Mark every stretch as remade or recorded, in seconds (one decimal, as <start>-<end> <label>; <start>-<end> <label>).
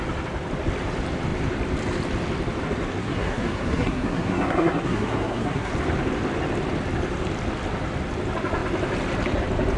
0.0-3.0 recorded; 3.0-5.7 remade; 5.7-9.8 recorded